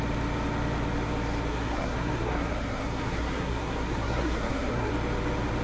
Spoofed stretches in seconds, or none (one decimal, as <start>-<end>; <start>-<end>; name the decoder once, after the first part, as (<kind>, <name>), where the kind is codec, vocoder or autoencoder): 1.5-4.9 (codec, SNAC)